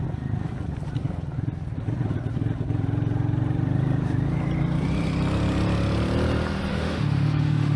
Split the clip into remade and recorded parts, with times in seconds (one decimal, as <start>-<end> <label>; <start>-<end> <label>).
0.0-6.7 recorded; 6.7-7.8 remade